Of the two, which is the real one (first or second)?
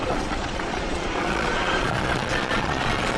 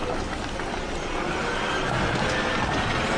second